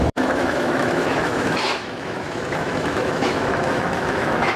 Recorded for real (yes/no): no